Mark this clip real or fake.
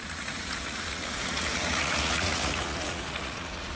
fake